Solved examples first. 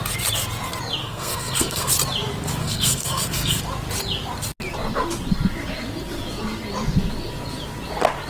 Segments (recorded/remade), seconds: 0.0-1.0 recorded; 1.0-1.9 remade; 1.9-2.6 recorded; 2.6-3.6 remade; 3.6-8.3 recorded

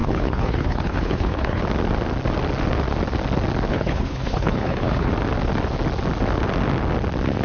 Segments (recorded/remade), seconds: 0.0-1.6 remade; 1.6-3.7 recorded; 3.7-5.1 remade; 5.1-7.4 recorded

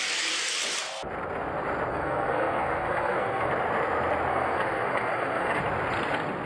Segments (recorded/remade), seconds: 0.0-1.9 recorded; 1.9-3.5 remade; 3.5-4.3 recorded; 4.3-5.6 remade; 5.6-6.5 recorded

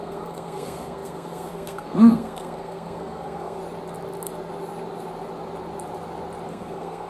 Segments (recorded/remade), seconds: 0.0-3.6 remade; 3.6-6.5 recorded; 6.5-7.1 remade

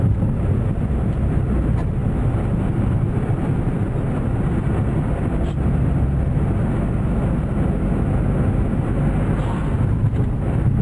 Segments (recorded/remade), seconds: 0.0-10.8 recorded

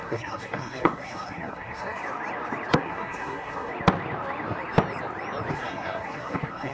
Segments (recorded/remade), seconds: 0.0-2.0 remade; 2.0-2.7 recorded; 2.7-3.7 remade; 3.7-5.5 recorded; 5.5-6.7 remade

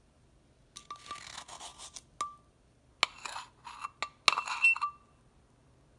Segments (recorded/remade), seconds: 0.0-6.0 recorded